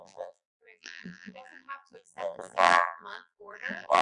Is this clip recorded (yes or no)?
no